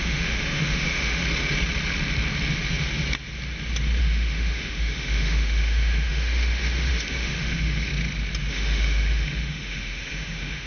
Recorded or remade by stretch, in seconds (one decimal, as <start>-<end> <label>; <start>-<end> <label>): 0.0-1.2 remade; 1.2-4.0 recorded; 4.0-7.9 remade; 7.9-8.5 recorded; 8.5-10.7 remade